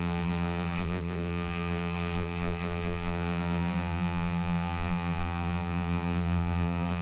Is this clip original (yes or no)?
no